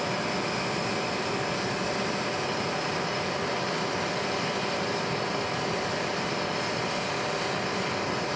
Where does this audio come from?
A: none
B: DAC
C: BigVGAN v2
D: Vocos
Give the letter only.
A